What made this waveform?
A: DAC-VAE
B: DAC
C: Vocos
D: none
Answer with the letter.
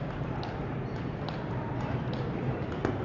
D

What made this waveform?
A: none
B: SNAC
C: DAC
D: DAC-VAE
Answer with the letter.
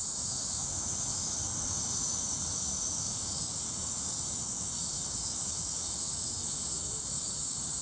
D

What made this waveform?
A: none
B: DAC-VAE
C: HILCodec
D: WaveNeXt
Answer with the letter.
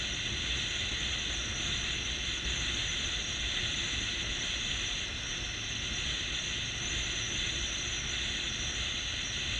A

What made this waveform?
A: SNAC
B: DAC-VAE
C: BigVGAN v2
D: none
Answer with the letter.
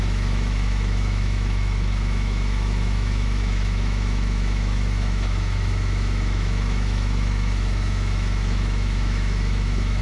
B